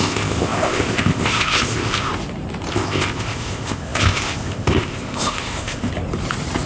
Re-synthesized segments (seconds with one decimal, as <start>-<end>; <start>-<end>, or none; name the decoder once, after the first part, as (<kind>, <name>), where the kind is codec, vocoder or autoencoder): 0.0-2.1 (codec, ZipCodec); 2.7-5.9